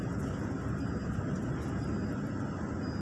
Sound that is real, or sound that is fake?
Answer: real